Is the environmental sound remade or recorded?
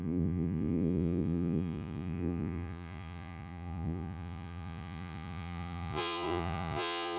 remade